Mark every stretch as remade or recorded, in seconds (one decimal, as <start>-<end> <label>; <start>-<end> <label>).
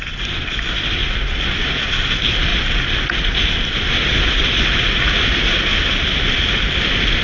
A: 0.0-1.0 recorded; 1.0-1.9 remade; 1.9-5.7 recorded; 5.7-6.4 remade; 6.4-7.2 recorded